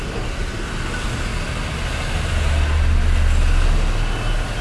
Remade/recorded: recorded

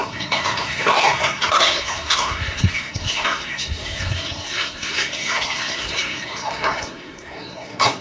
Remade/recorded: remade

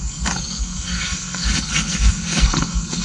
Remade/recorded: remade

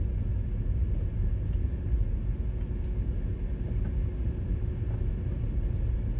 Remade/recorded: recorded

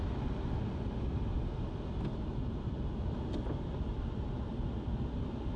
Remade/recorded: recorded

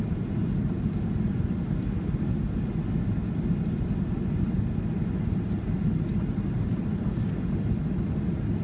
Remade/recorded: recorded